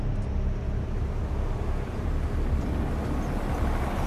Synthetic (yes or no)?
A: no